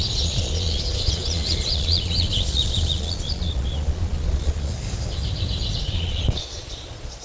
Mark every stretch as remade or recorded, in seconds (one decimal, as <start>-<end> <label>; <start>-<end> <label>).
0.0-4.7 remade; 4.7-5.8 recorded; 5.8-7.2 remade